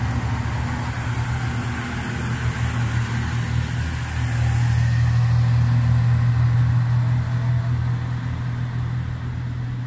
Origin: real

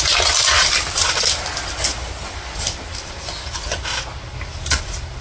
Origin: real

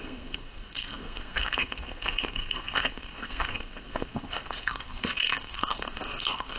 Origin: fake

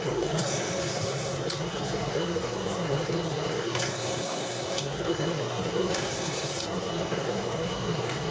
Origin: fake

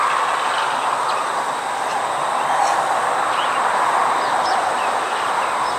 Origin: real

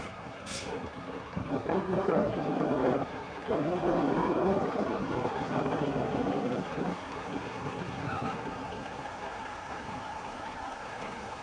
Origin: fake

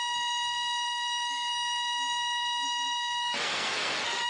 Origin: fake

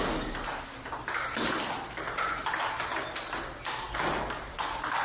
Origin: real